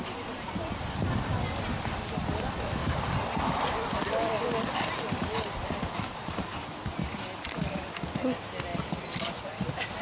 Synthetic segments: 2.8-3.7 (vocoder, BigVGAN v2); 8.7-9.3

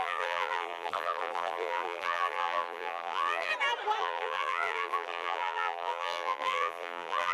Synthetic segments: 0.0-3.5 (vocoder, BigVGAN v2); 4.0-7.3

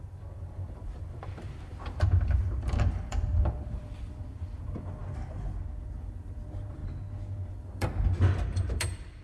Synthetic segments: 0.0-5.0 (vocoder, BigVGAN v2); 5.8-6.8; 7.5-9.2